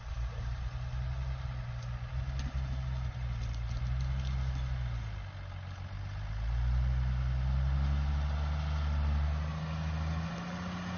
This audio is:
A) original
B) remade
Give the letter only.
A